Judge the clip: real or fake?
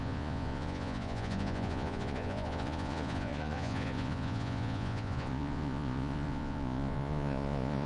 fake